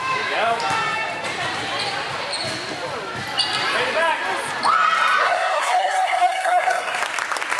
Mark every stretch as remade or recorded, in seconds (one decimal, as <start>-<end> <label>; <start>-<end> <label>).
0.0-5.2 recorded; 5.2-7.0 remade; 7.0-7.6 recorded

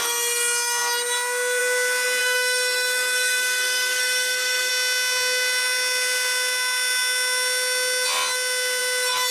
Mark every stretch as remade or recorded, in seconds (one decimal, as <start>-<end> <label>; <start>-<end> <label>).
0.0-2.2 recorded; 2.2-4.7 remade; 4.7-9.3 recorded

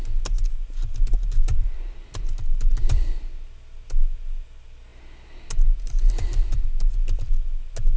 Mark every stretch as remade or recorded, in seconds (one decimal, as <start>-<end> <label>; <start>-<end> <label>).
0.0-8.0 recorded

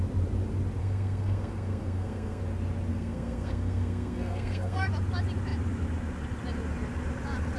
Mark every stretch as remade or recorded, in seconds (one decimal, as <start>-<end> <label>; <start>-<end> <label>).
0.0-0.8 recorded; 0.8-2.4 remade; 2.4-2.9 recorded; 2.9-4.9 remade; 4.9-7.6 recorded

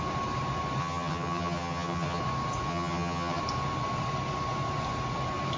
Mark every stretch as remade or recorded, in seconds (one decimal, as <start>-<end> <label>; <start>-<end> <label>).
0.0-0.8 recorded; 0.8-2.2 remade; 2.2-2.7 recorded; 2.7-3.4 remade; 3.4-5.6 recorded

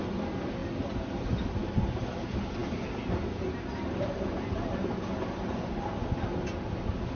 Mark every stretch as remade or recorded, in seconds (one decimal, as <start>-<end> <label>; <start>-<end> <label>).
0.0-7.1 recorded

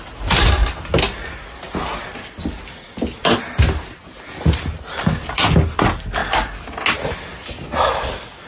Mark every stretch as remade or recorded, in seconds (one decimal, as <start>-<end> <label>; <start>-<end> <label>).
0.0-8.5 recorded